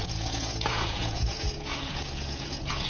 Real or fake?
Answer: fake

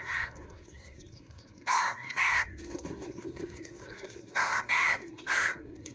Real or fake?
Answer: fake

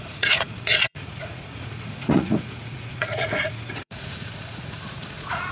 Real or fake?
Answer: fake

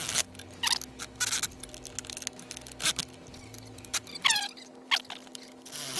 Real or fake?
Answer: real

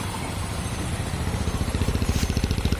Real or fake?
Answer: fake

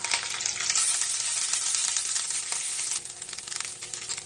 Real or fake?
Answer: real